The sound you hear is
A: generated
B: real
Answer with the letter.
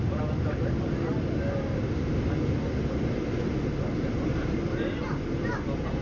B